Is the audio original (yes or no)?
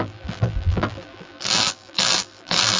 no